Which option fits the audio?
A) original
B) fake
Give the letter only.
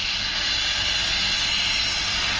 A